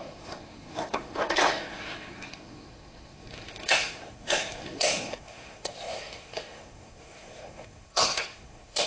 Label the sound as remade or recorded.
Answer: remade